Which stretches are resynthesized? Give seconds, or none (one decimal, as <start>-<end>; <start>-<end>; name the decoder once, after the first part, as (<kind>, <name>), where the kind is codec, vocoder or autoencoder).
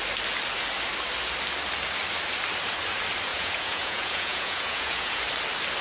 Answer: 3.3-5.2 (vocoder, Vocos)